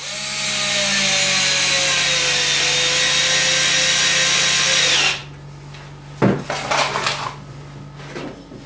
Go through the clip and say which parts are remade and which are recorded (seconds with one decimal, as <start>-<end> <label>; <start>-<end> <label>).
0.0-8.7 recorded